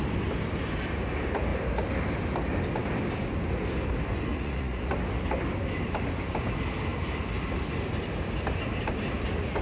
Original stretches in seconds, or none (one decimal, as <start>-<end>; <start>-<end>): 0.0-4.3; 4.9-9.6